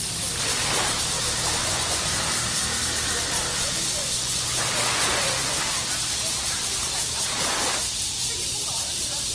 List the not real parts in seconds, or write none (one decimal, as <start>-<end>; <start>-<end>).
1.6-2.3; 3.5-5.6